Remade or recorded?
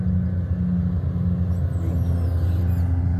recorded